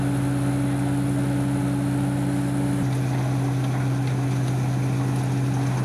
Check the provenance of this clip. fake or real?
real